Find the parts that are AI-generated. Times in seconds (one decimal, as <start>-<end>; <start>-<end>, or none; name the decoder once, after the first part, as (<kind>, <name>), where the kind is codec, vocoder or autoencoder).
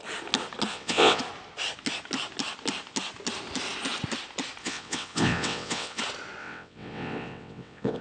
0.7-1.2 (vocoder, WaveNeXt); 4.6-6.0; 6.4-8.0